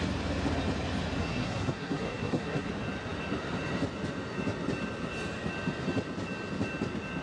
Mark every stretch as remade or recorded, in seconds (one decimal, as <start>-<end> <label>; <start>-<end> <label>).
0.0-1.2 recorded; 1.2-2.7 remade; 2.7-7.2 recorded

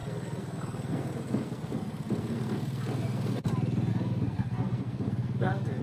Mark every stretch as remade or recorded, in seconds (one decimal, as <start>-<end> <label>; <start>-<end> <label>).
0.0-3.5 remade; 3.5-3.9 recorded; 3.9-5.8 remade